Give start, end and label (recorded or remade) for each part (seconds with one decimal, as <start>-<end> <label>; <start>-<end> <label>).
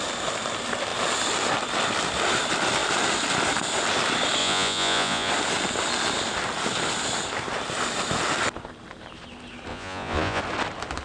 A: 0.0-4.4 recorded; 4.4-5.3 remade; 5.3-9.7 recorded; 9.7-10.4 remade; 10.4-11.0 recorded